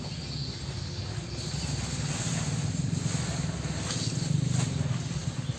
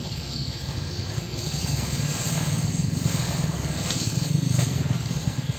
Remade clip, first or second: second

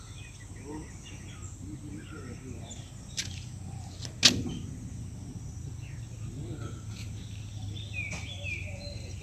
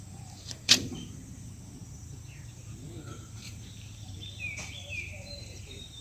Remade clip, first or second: second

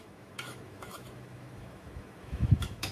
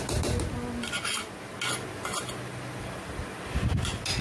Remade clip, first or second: first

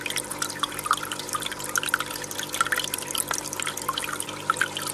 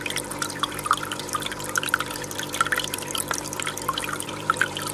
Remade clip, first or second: second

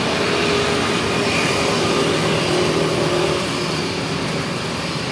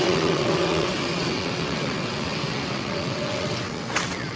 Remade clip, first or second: second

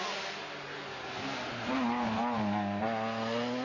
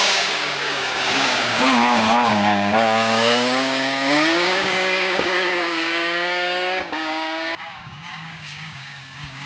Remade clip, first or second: second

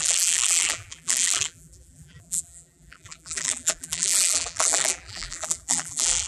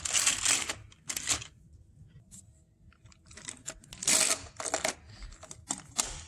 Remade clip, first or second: first